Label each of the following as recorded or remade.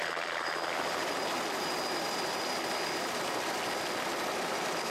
remade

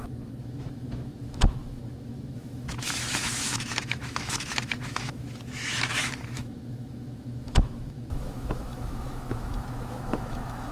remade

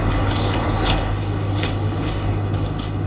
remade